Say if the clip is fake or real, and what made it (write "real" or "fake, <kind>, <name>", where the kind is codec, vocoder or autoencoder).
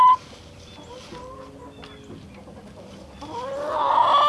real